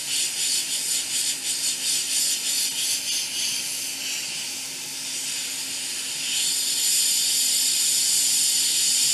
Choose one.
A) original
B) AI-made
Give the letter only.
A